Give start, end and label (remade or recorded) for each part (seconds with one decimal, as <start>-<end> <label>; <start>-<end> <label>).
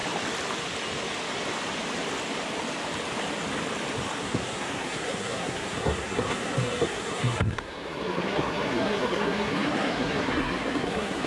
0.0-4.2 recorded; 4.2-11.3 remade